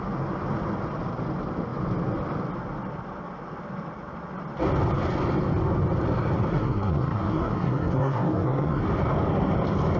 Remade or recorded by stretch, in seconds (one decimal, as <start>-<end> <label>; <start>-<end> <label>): 0.0-6.5 recorded; 6.5-8.8 remade; 8.8-10.0 recorded